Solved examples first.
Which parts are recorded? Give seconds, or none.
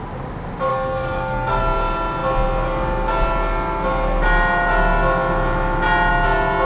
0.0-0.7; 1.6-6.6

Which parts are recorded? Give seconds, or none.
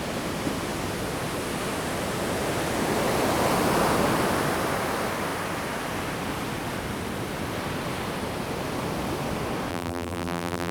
0.0-9.7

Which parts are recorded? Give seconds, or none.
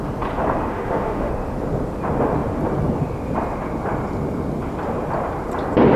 0.0-0.7; 1.3-6.0